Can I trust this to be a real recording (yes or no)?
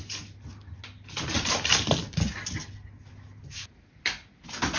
yes